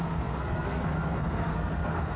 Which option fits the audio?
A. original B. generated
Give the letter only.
B